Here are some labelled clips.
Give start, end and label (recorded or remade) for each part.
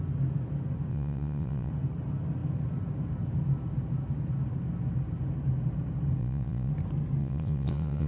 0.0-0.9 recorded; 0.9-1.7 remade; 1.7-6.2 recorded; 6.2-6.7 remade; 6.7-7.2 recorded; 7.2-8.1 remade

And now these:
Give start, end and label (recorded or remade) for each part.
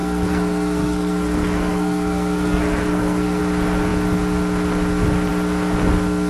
0.0-3.4 remade; 3.4-6.3 recorded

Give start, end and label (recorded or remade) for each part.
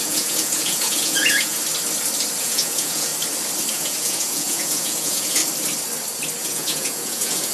0.0-1.6 remade; 1.6-2.4 recorded; 2.4-3.1 remade; 3.1-3.7 recorded; 3.7-5.4 remade; 5.4-6.4 recorded; 6.4-7.5 remade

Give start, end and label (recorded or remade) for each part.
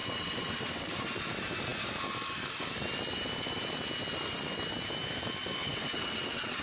0.0-1.0 remade; 1.0-5.6 recorded; 5.6-6.6 remade